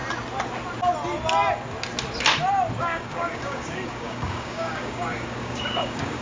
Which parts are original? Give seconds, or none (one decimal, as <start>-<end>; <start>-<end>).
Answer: 0.0-2.8